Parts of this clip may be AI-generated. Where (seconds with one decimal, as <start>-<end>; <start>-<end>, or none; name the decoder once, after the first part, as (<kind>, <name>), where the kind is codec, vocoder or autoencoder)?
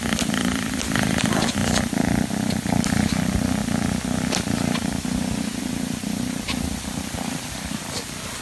0.0-3.6 (vocoder, BigVGAN v2); 5.6-8.4